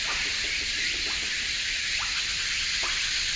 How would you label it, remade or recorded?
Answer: recorded